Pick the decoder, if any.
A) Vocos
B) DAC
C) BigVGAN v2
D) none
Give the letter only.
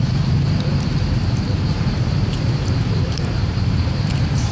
C